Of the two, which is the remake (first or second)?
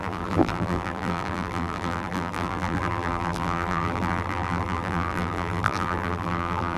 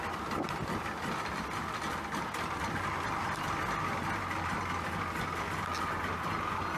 first